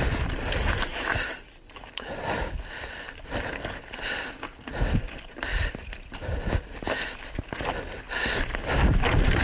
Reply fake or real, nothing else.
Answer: fake